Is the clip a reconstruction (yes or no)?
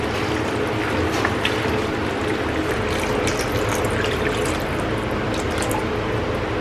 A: no